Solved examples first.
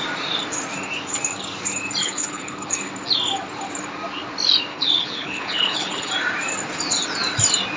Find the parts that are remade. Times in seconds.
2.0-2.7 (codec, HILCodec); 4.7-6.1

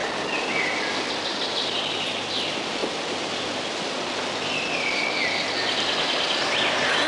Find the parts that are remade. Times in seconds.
none